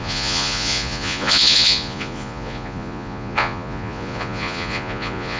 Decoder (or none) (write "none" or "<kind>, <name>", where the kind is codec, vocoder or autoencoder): vocoder, Vocos